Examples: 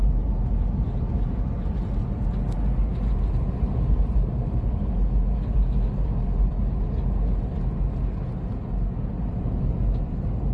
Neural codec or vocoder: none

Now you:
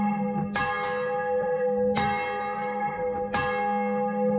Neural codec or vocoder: none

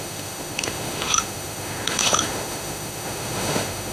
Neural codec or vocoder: autoencoder, DAC-VAE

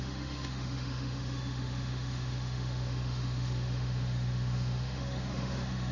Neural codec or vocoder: autoencoder, DAC-VAE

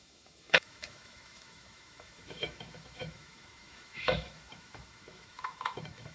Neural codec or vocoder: autoencoder, DAC-VAE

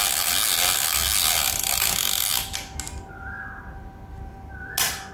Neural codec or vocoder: none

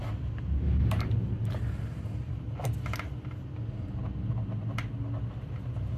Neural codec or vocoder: none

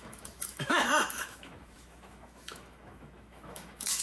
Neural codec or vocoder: autoencoder, DAC-VAE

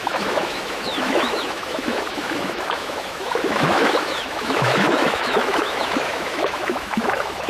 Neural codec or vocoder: autoencoder, DAC-VAE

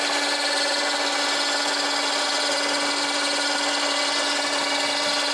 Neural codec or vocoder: none